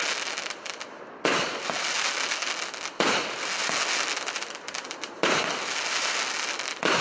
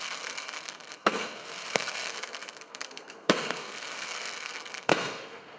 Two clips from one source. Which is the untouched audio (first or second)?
first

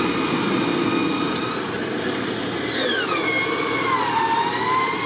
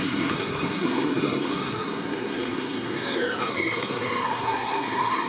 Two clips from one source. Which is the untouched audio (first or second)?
first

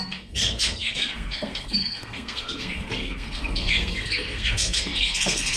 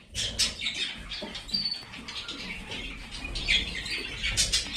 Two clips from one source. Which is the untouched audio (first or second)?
second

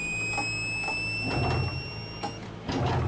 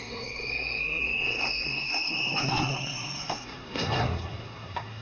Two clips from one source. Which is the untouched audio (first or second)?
first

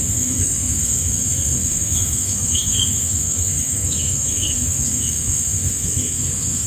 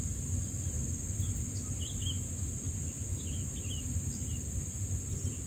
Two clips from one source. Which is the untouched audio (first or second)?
second